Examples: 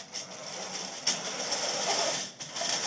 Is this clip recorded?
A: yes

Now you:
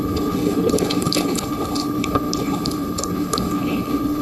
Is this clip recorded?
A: no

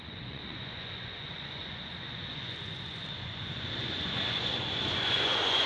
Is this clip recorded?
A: no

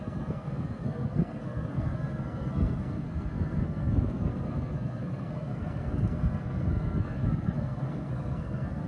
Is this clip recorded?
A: no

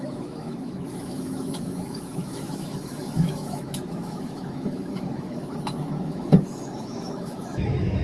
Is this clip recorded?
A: no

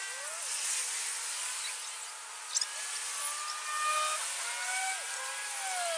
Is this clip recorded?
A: yes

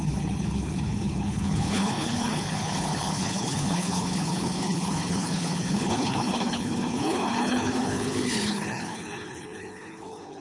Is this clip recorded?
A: no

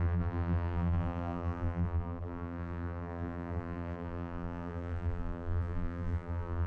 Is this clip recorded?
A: no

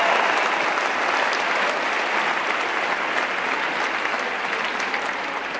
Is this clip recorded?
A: yes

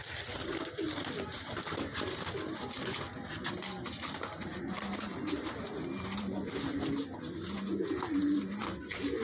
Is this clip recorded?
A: yes